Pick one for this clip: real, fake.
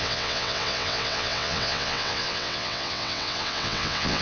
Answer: fake